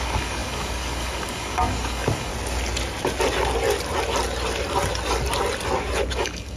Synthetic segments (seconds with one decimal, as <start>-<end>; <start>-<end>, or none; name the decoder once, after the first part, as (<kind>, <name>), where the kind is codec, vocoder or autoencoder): 0.0-2.3 (codec, DAC); 6.1-6.6